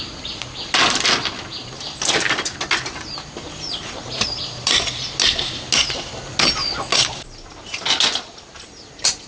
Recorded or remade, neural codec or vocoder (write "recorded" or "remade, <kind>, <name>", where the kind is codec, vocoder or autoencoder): recorded